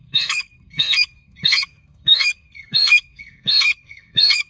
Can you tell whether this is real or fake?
fake